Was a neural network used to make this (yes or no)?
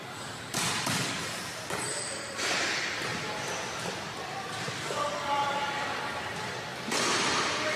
yes